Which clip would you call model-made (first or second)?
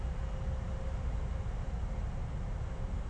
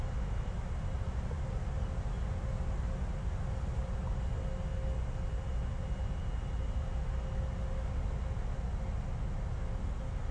first